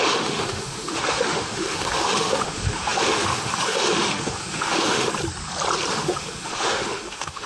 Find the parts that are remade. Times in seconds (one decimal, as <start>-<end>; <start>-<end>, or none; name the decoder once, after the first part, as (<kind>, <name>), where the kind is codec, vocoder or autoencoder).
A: 0.0-5.1 (autoencoder, DAC-VAE); 5.9-7.5